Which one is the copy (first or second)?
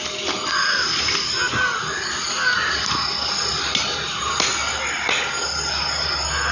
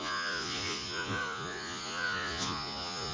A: second